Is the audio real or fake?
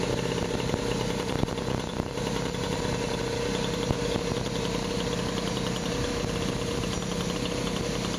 real